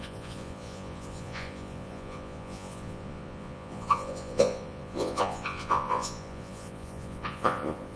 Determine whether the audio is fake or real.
fake